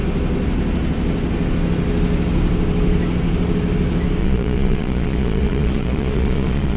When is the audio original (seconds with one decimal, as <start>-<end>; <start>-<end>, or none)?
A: 0.0-4.2